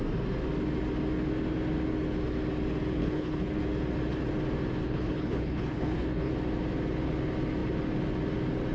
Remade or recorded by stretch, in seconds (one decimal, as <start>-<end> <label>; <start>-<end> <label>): 0.0-3.0 recorded; 3.0-3.6 remade; 3.6-4.8 recorded; 4.8-6.3 remade; 6.3-8.7 recorded